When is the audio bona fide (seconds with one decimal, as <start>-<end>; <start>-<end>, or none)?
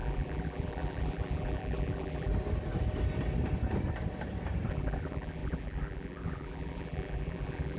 2.3-4.7